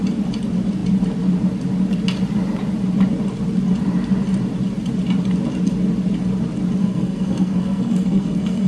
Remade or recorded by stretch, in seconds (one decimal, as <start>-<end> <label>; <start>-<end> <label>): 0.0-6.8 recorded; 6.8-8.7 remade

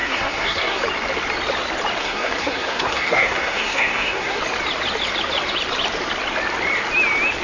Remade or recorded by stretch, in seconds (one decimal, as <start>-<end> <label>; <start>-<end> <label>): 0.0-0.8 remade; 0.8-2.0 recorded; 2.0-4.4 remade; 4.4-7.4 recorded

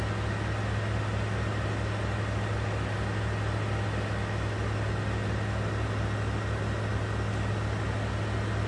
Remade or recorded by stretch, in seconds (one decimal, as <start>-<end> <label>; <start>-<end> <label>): 0.0-8.7 recorded